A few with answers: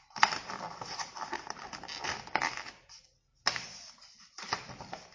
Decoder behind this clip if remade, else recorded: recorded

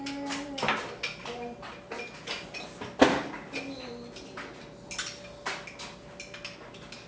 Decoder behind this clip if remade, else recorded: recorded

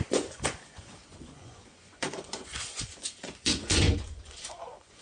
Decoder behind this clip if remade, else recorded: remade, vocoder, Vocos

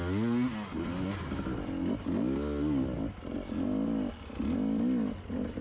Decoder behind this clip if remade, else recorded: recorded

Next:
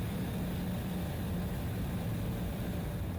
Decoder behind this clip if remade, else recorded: remade, vocoder, BigVGAN v2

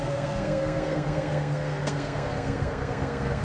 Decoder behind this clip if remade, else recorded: remade, codec, SNAC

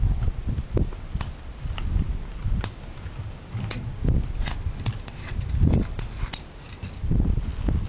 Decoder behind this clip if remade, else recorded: recorded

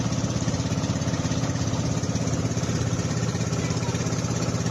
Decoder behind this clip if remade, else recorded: recorded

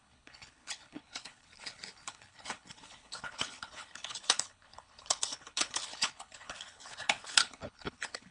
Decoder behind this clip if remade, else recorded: remade, codec, HILCodec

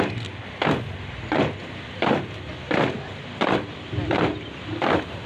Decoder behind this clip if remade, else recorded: recorded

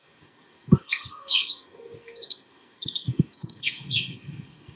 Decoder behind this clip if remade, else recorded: remade, codec, SNAC